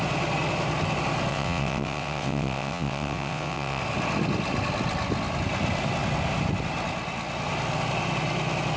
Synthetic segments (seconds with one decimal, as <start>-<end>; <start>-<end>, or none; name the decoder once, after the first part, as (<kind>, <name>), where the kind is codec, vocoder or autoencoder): 1.3-3.8 (vocoder, WaveNeXt)